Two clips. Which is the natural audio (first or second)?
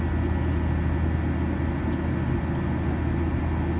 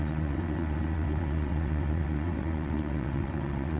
first